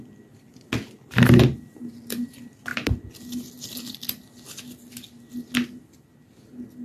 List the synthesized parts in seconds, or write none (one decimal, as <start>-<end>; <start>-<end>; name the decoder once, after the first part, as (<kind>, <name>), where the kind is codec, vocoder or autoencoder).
none